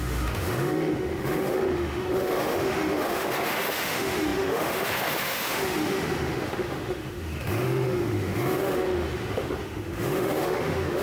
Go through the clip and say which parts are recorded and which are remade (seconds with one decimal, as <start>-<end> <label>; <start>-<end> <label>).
0.0-11.0 remade